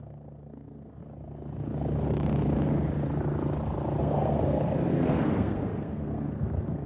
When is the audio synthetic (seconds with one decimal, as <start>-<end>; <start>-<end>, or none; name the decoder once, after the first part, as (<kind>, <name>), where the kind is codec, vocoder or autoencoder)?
0.0-1.0 (codec, SNAC); 4.0-6.9